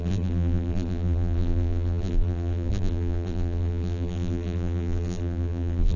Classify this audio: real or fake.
fake